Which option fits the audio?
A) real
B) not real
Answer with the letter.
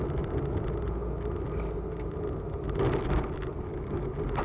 A